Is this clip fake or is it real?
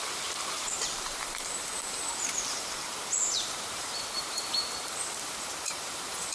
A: fake